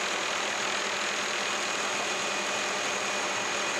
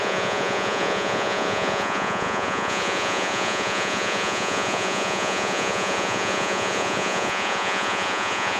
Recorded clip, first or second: first